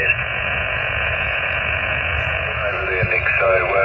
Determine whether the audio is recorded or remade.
remade